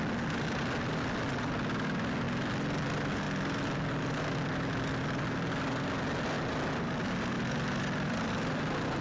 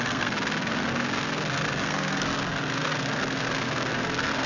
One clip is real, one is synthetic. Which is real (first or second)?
first